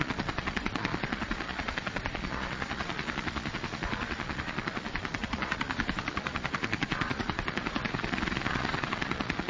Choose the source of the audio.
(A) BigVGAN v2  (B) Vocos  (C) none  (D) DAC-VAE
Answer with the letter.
B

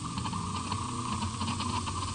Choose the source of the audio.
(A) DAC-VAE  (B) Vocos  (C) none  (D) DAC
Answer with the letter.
B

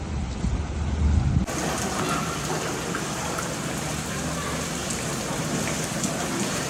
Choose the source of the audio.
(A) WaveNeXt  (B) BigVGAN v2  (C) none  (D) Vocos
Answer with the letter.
C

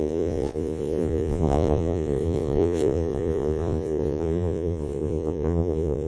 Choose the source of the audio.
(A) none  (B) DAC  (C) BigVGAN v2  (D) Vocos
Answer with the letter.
D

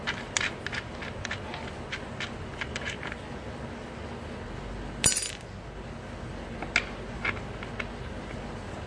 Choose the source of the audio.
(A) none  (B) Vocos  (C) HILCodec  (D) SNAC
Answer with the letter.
A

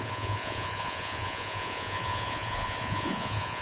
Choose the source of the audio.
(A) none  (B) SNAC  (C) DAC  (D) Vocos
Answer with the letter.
D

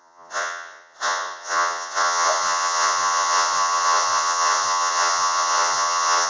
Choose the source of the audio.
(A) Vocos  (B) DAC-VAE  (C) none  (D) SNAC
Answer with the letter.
A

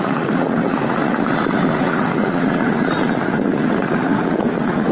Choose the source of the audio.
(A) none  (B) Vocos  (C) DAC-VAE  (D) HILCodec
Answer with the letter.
B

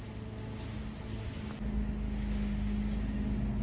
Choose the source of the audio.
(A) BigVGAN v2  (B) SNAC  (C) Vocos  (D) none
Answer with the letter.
D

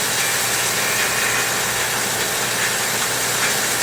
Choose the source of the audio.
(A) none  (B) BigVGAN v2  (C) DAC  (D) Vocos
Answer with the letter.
A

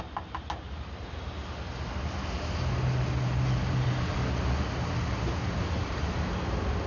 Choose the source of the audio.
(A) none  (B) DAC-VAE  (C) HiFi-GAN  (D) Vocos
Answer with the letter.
A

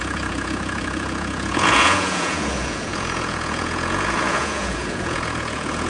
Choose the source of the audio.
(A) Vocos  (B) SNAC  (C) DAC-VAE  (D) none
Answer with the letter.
A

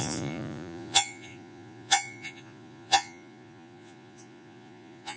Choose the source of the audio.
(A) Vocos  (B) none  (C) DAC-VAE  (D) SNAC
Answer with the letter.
A